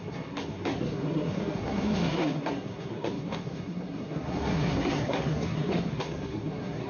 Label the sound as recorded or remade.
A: remade